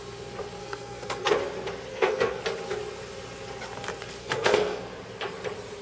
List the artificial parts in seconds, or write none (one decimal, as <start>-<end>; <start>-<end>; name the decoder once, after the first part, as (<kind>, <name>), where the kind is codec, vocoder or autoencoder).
0.6-1.3 (codec, SNAC); 1.9-2.4; 4.2-4.8